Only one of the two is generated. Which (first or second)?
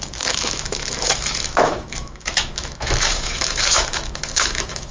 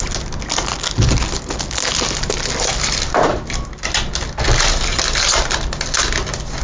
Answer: first